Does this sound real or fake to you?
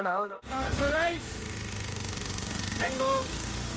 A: fake